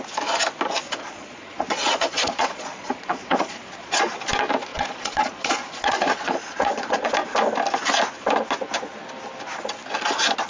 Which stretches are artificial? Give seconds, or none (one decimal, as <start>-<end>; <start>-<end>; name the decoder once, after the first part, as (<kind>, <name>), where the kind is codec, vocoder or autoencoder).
0.8-4.1 (vocoder, Vocos); 4.7-7.1